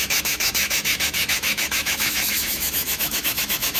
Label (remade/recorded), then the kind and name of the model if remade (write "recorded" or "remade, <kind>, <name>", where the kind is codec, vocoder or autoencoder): remade, autoencoder, DAC-VAE